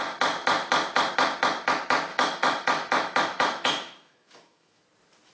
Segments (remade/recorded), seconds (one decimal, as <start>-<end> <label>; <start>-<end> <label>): 0.0-2.1 recorded; 2.1-4.8 remade; 4.8-5.3 recorded